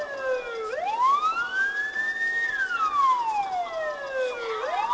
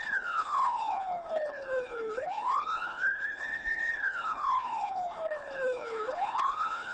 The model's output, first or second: second